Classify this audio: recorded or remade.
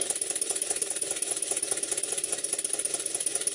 recorded